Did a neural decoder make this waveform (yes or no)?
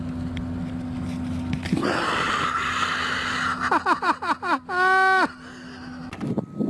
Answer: no